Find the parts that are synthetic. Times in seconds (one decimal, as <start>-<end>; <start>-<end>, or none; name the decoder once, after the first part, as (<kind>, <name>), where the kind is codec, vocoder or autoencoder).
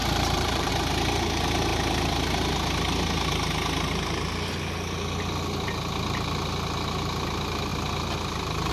0.0-0.7 (vocoder, BigVGAN v2)